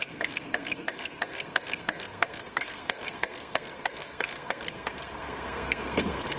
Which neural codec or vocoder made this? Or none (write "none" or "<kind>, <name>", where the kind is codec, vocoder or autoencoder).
codec, SNAC